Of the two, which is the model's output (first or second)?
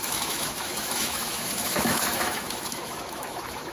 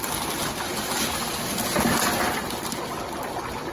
first